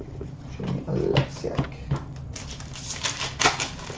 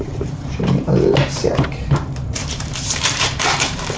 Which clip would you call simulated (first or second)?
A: second